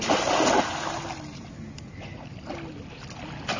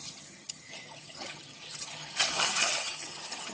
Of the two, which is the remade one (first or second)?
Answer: second